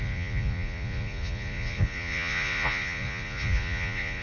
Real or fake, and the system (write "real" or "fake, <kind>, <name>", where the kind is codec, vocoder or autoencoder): fake, vocoder, Vocos